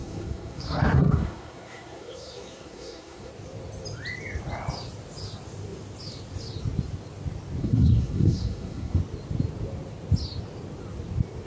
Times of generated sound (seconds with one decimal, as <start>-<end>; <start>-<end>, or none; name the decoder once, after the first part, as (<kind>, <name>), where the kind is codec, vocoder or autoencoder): 0.0-3.3 (codec, SNAC); 7.6-9.0

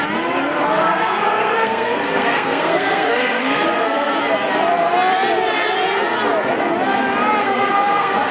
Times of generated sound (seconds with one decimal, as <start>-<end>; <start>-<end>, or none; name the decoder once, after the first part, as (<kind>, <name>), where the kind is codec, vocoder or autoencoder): 0.8-4.1 (codec, SNAC); 7.4-8.3

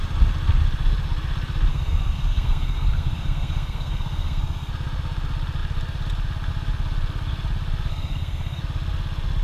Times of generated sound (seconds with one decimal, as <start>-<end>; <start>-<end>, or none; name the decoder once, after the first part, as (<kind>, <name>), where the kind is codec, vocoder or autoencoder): 1.7-4.7 (codec, SNAC); 7.9-8.6

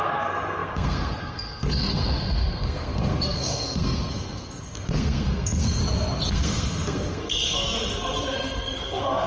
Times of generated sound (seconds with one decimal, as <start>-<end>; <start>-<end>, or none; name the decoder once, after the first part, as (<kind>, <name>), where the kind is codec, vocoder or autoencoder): 0.0-5.8 (codec, SNAC); 6.3-9.3

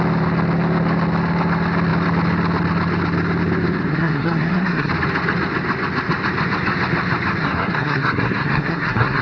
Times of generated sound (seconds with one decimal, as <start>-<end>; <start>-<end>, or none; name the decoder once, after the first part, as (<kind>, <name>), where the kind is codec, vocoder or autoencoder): 3.9-4.9 (codec, SNAC); 7.4-9.2

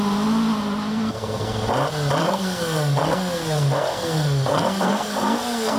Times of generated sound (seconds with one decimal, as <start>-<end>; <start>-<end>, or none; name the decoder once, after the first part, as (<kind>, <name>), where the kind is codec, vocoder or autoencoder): 0.9-1.7 (codec, SNAC); 2.2-5.8